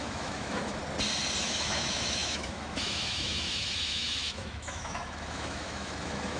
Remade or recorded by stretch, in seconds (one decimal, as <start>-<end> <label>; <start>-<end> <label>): 0.0-0.8 remade; 0.8-1.4 recorded; 1.4-6.4 remade